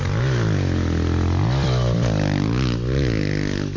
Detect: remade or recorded recorded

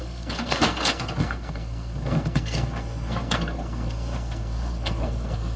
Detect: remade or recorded remade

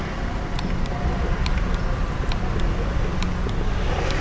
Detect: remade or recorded recorded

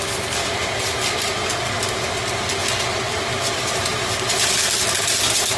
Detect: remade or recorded recorded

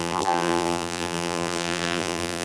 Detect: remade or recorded remade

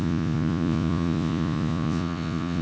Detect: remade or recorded remade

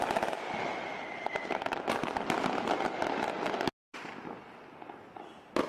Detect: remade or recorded recorded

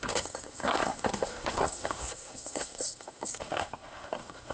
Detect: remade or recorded remade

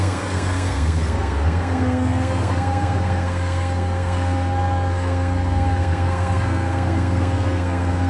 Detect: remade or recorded remade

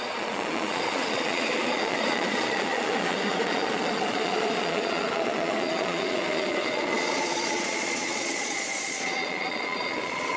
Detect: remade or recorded remade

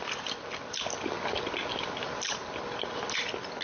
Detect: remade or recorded recorded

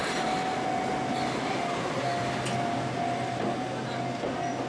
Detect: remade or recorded recorded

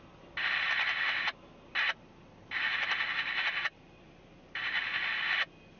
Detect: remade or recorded recorded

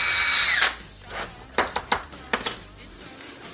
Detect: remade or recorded recorded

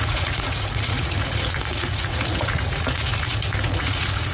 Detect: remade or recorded remade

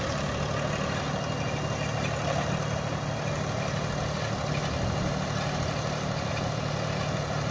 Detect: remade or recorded recorded